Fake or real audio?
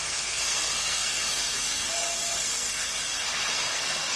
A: fake